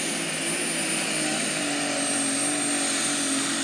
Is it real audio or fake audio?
real